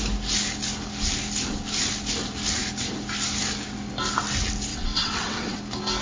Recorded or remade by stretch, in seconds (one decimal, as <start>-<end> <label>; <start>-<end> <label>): 0.0-4.7 recorded; 4.7-5.6 remade; 5.6-6.0 recorded